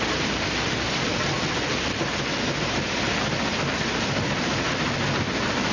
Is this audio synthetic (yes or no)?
no